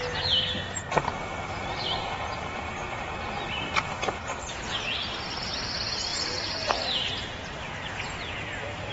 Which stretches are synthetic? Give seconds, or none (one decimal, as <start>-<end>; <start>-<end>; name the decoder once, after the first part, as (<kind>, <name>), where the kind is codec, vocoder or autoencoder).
none